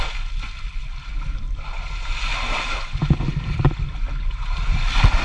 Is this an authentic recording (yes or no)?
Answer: yes